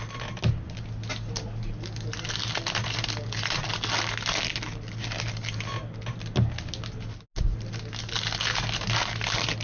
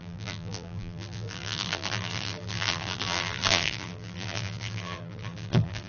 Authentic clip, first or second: first